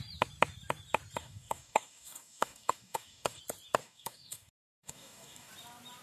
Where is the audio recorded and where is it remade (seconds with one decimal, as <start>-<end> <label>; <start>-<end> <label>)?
0.0-1.2 recorded; 1.2-3.4 remade; 3.4-3.8 recorded; 3.8-5.5 remade; 5.5-6.0 recorded